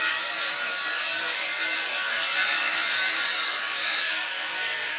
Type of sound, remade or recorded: remade